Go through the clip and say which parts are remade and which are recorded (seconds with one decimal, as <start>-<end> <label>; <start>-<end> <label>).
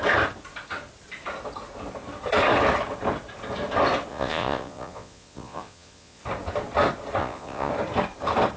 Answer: 0.0-4.1 recorded; 4.1-6.2 remade; 6.2-7.2 recorded; 7.2-7.7 remade; 7.7-8.6 recorded